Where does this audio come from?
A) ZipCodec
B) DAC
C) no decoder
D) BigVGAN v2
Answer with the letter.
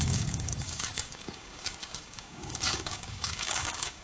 B